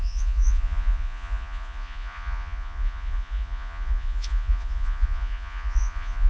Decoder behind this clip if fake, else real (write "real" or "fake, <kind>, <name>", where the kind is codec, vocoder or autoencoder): fake, vocoder, Vocos